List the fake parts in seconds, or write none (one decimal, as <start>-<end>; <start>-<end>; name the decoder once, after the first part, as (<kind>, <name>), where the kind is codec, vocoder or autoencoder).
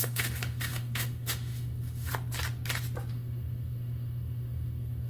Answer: 0.0-2.1 (autoencoder, DAC-VAE); 3.1-5.1